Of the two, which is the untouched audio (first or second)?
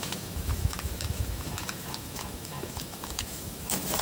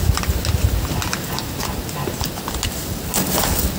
second